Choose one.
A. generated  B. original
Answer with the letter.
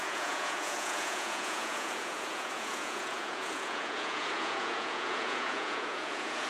A